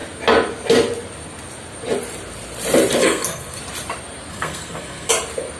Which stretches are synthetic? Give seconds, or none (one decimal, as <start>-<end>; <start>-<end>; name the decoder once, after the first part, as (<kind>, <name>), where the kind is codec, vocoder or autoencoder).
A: 3.0-3.6 (codec, SNAC); 4.3-5.1